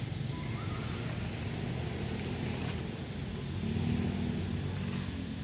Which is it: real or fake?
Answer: real